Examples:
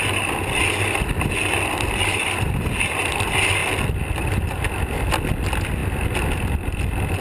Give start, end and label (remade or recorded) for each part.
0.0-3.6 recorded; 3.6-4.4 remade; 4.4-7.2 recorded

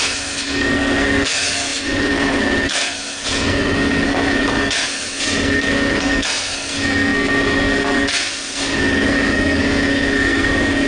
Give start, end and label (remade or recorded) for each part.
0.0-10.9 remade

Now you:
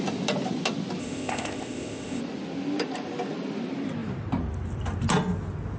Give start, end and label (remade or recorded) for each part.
0.0-1.0 recorded; 1.0-2.2 remade; 2.2-5.8 recorded

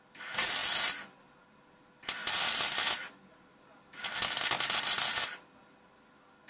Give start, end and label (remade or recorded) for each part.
0.0-6.5 recorded

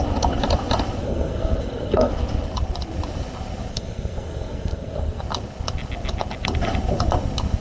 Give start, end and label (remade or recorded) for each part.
0.0-1.0 recorded; 1.0-2.1 remade; 2.1-3.7 recorded; 3.7-5.2 remade; 5.2-7.6 recorded

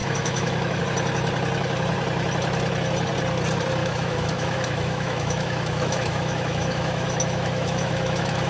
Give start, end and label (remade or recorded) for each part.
0.0-0.8 remade; 0.8-3.8 recorded; 3.8-8.5 remade

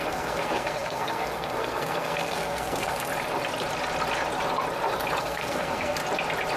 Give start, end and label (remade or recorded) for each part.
0.0-3.1 remade; 3.1-5.2 recorded; 5.2-6.0 remade; 6.0-6.6 recorded